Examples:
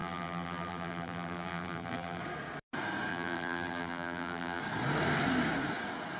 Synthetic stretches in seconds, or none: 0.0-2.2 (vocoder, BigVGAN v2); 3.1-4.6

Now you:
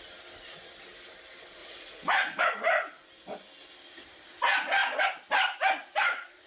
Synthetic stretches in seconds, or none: 1.6-2.4 (vocoder, Vocos); 5.8-6.5

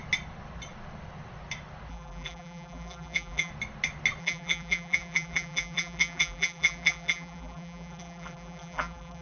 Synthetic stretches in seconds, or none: 1.9-3.5 (vocoder, BigVGAN v2); 4.2-9.2

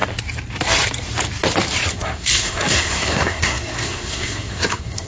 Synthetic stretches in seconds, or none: 1.9-5.1 (codec, SNAC)

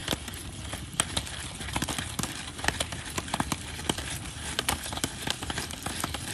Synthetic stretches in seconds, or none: none

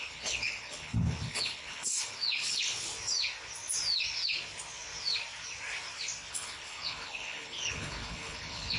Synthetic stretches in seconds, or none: 0.0-2.9 (codec, HILCodec); 6.3-8.8

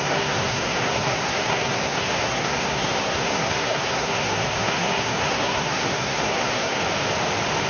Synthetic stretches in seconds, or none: 0.0-6.8 (codec, SNAC)